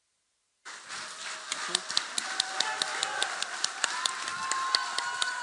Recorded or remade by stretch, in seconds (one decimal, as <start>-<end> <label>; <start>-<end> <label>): 0.0-5.4 recorded